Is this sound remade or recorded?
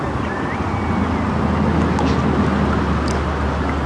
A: recorded